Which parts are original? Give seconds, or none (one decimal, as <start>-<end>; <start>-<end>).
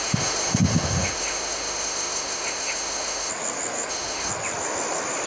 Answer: 3.3-3.9; 4.3-5.3